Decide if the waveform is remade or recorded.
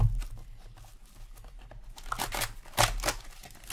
recorded